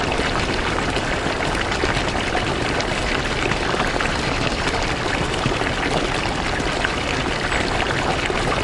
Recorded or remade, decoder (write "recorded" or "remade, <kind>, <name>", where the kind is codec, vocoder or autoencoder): recorded